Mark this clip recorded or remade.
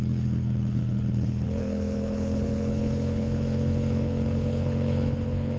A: remade